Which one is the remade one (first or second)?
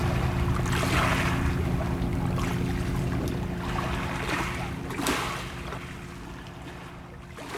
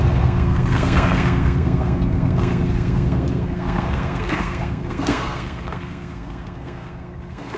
second